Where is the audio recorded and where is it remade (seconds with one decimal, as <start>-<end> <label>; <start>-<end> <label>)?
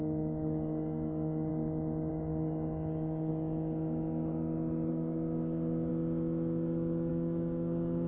0.0-1.5 remade; 1.5-2.1 recorded; 2.1-3.3 remade; 3.3-4.9 recorded; 4.9-5.9 remade; 5.9-7.1 recorded; 7.1-8.1 remade